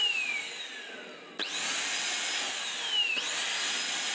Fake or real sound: real